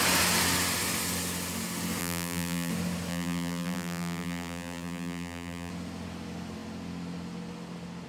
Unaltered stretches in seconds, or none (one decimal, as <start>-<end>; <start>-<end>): 0.0-2.0; 2.7-3.1; 5.7-8.1